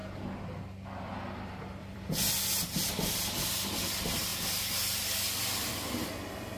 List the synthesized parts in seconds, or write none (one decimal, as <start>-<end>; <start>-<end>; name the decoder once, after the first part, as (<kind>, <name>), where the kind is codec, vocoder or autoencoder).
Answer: 1.8-2.3 (vocoder, BigVGAN v2)